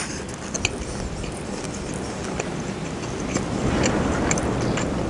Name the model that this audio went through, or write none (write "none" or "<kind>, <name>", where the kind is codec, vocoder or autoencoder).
none